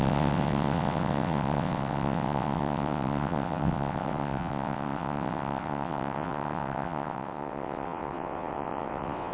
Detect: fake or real fake